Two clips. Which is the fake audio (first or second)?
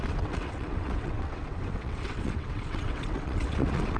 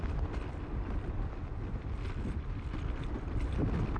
first